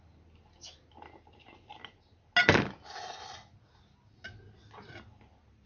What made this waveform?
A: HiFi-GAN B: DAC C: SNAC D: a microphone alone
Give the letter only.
D